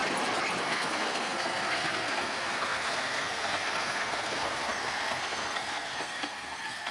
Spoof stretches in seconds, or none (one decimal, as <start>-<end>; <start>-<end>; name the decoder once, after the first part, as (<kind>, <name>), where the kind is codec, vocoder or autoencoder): 0.6-6.9 (codec, SNAC)